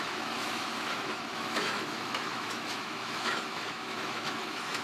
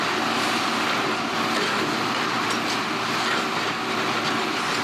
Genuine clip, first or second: second